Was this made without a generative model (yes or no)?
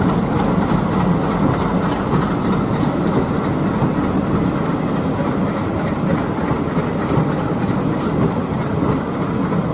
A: yes